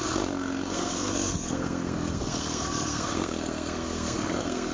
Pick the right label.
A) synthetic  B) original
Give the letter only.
A